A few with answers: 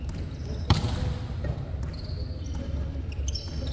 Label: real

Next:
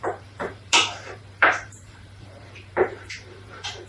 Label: fake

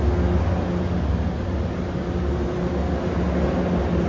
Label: real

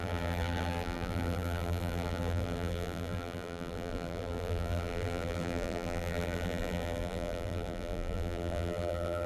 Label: fake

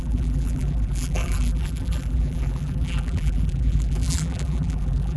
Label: fake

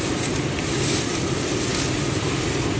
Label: real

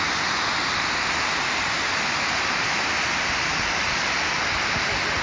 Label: real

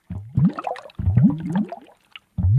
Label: real